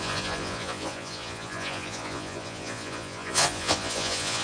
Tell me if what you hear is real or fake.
fake